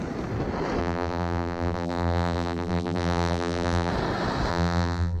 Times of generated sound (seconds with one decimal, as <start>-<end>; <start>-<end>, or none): 0.8-3.9; 4.5-5.2